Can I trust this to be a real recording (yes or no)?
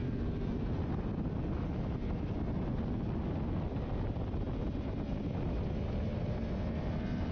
yes